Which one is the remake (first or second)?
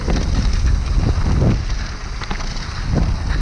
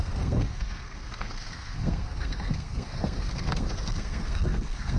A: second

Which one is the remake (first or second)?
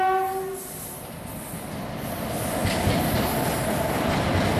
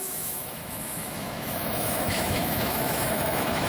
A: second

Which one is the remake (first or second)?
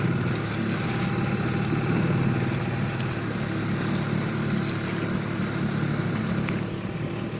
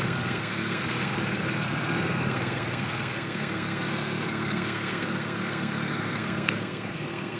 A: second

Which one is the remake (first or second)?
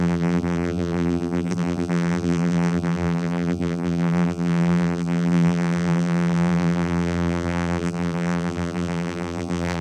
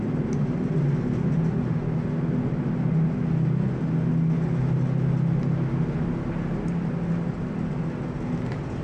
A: first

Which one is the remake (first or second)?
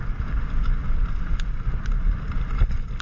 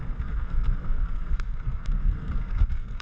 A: second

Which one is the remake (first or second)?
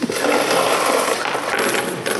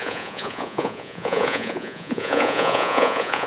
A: second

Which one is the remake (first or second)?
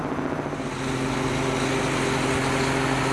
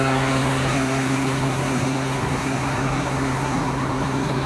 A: second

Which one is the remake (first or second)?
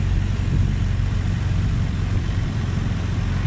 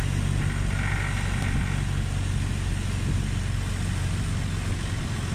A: first